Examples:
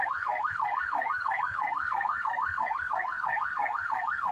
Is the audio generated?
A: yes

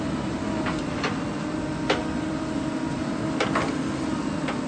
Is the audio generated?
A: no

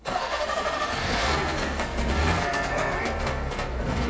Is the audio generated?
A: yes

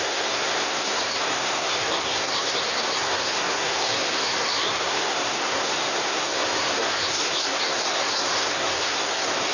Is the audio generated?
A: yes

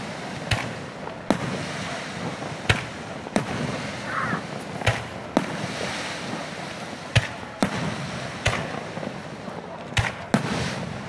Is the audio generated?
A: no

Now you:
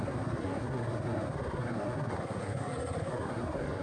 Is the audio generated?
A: yes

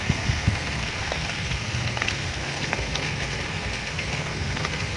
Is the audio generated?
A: yes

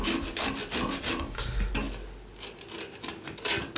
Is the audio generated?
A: no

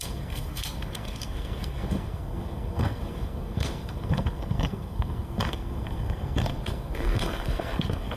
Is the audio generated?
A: yes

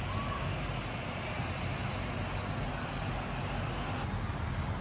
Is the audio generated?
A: no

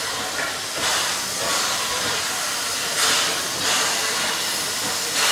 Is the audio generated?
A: no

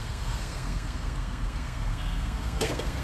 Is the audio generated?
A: yes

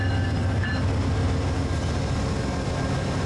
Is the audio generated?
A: no